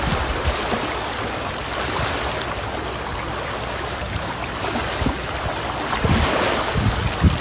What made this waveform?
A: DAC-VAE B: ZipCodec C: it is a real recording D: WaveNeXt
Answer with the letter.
C